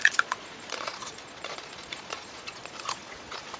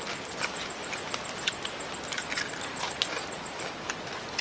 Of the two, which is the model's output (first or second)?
first